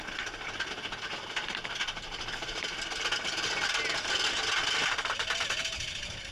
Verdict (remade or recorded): recorded